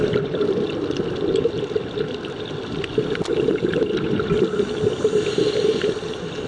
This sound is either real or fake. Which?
real